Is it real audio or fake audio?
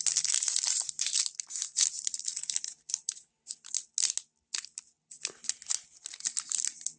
real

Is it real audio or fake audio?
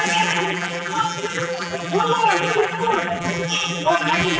fake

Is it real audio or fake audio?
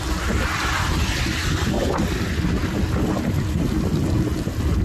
real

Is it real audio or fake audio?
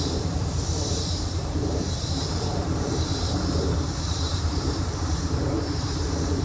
fake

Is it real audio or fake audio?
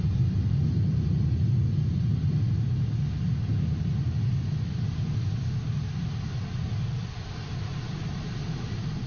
real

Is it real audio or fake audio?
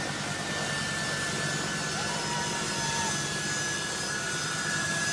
real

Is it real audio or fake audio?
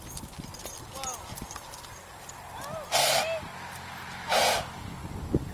real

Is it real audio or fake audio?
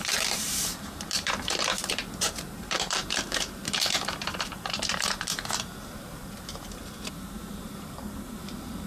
fake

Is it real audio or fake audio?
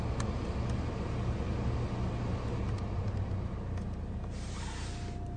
real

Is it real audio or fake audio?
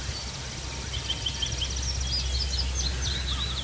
real